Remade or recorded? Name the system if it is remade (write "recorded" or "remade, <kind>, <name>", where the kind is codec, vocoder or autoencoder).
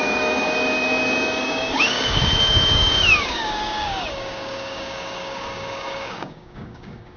remade, codec, DAC